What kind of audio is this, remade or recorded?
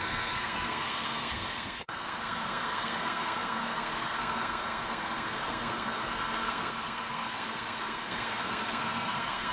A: remade